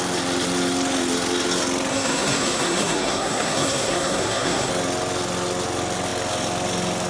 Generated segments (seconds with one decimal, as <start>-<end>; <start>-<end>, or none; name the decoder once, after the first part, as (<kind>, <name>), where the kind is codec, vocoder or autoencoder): 1.9-4.7 (codec, SNAC)